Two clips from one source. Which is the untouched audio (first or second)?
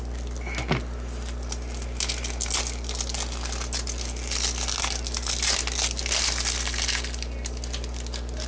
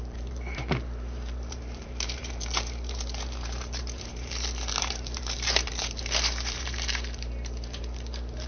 first